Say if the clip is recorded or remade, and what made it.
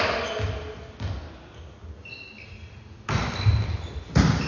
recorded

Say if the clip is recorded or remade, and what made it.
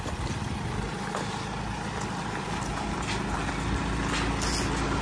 recorded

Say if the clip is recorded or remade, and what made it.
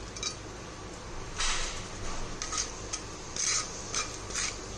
recorded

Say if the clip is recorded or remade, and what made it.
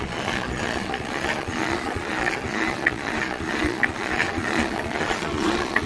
remade, vocoder, Vocos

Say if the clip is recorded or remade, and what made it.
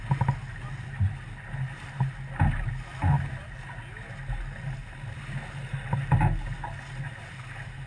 recorded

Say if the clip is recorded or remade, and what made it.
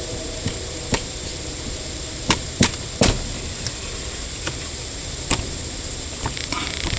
remade, vocoder, BigVGAN v2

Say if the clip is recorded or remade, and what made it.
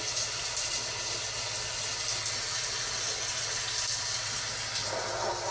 recorded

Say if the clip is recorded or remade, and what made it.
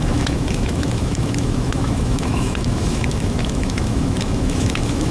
remade, autoencoder, DAC-VAE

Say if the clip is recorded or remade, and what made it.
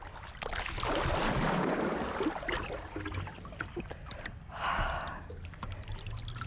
recorded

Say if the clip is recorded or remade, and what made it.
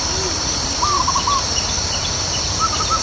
recorded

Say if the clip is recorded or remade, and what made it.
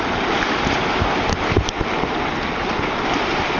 recorded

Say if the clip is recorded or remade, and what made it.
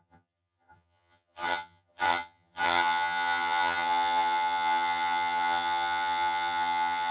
remade, vocoder, HiFi-GAN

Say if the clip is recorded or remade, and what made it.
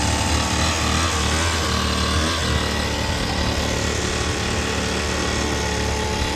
recorded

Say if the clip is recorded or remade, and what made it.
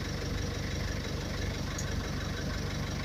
recorded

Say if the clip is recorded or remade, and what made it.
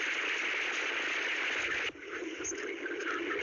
recorded